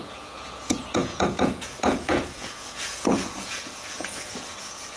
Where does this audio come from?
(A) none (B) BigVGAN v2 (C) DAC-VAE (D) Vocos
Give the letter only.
D